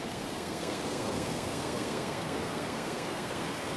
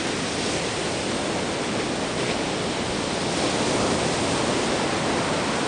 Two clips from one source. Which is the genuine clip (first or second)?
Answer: second